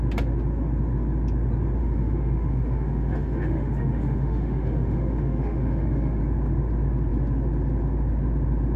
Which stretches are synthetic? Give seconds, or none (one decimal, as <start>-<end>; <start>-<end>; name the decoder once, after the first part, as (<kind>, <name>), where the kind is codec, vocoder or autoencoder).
1.8-6.2 (autoencoder, DAC-VAE)